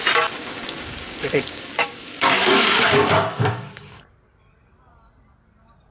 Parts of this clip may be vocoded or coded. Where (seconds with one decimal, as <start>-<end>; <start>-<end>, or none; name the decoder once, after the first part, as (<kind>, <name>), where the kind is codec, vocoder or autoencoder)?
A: 0.5-4.0 (codec, DAC)

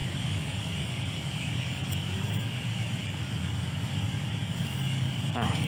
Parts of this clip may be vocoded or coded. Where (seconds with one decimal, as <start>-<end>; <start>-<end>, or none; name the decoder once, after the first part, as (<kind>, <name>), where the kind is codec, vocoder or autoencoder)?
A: 0.0-5.7 (codec, DAC)